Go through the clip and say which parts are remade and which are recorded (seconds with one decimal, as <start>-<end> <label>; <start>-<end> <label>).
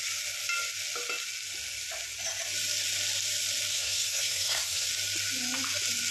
0.0-3.7 recorded; 3.7-4.9 remade; 4.9-6.1 recorded